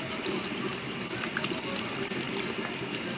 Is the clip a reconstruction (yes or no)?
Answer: no